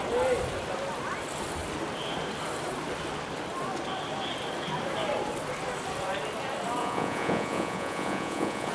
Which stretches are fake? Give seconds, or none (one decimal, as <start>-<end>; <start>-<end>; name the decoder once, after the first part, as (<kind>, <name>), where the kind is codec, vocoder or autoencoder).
6.8-8.7 (vocoder, Vocos)